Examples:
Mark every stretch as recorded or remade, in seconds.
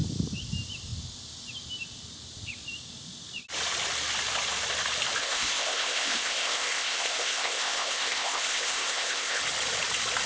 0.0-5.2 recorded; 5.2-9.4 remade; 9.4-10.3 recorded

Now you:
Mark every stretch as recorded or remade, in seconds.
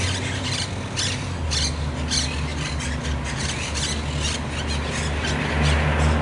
0.0-6.2 recorded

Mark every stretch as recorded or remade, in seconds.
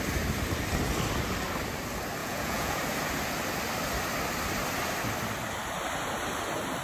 0.0-2.2 recorded; 2.2-2.8 remade; 2.8-6.8 recorded